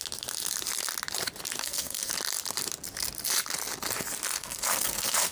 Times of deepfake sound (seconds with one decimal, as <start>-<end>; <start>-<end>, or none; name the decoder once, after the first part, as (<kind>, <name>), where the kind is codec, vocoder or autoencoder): 1.6-2.1 (codec, SNAC); 4.4-5.3